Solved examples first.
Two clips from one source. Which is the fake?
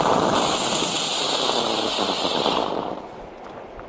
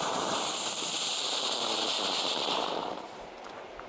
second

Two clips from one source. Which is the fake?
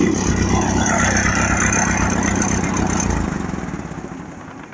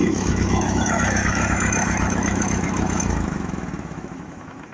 second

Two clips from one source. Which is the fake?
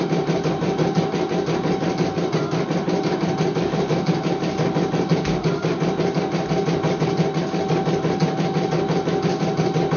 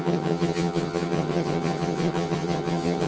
second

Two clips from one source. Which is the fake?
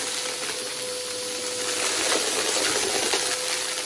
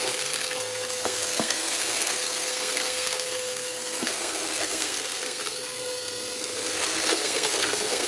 second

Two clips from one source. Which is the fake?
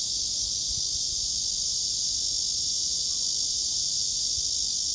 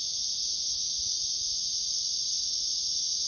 second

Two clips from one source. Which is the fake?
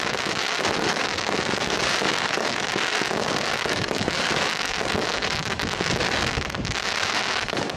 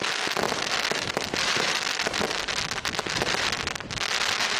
first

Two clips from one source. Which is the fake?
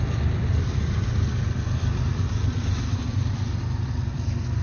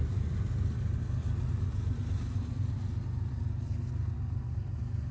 first